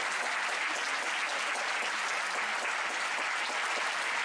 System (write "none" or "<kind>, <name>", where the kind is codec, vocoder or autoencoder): none